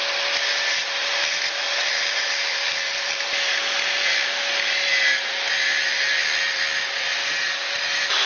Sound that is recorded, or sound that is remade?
remade